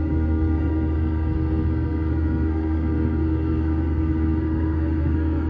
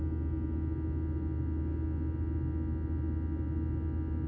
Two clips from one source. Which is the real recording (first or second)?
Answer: second